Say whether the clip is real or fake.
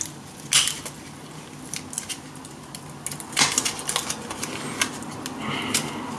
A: real